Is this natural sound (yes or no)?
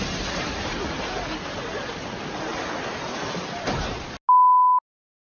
yes